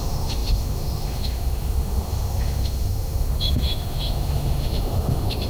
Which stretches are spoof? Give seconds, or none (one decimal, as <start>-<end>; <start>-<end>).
0.0-5.5